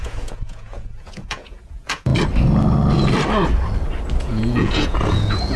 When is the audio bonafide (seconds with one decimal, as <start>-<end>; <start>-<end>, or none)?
2.1-4.2